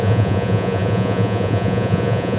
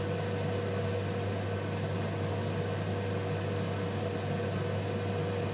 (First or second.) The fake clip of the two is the first